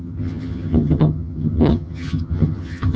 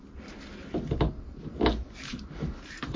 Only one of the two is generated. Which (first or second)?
first